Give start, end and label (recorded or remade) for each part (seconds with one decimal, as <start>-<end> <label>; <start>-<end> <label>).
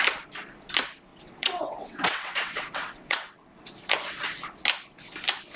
0.0-1.1 recorded; 1.1-3.7 remade; 3.7-5.6 recorded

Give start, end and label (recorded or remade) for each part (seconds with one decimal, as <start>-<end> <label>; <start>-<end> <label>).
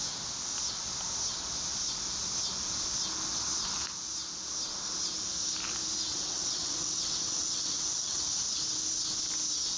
0.0-6.1 recorded; 6.1-8.4 remade; 8.4-9.8 recorded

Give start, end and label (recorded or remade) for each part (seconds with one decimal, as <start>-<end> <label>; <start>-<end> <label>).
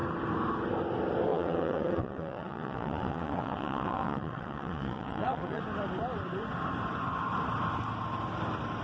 0.0-1.3 recorded; 1.3-5.6 remade; 5.6-8.8 recorded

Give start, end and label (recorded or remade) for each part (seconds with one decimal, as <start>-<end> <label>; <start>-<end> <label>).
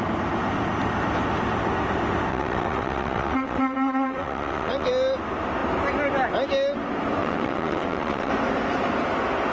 0.0-2.3 recorded; 2.3-4.9 remade; 4.9-7.2 recorded; 7.2-8.3 remade; 8.3-9.5 recorded